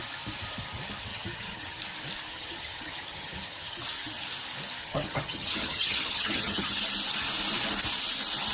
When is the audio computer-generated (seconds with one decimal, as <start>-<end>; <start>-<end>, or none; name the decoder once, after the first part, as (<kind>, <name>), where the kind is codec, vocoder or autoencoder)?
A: 1.1-1.8 (vocoder, HiFi-GAN); 2.3-3.8; 4.8-6.8